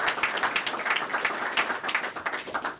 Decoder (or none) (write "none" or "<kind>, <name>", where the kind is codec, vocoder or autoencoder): vocoder, BigVGAN v2